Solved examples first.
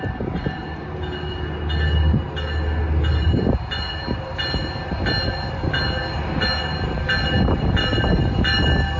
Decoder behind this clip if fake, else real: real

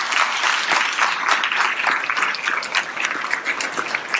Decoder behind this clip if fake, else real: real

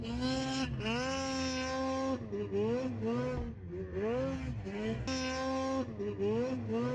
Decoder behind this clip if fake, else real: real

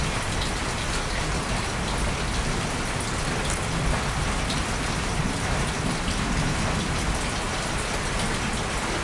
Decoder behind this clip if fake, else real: real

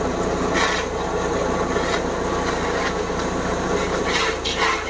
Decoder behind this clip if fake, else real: real